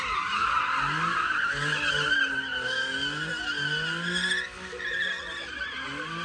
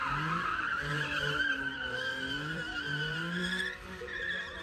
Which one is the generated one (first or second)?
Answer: second